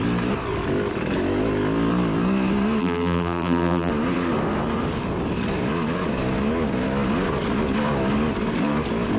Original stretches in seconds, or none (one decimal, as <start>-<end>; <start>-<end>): 0.0-2.8; 3.9-9.2